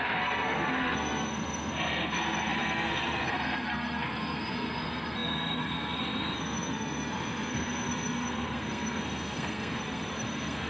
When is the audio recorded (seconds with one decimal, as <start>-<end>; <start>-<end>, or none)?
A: none